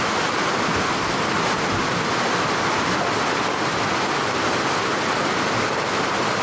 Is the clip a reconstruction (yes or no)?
no